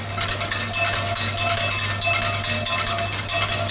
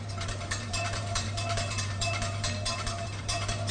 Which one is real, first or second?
first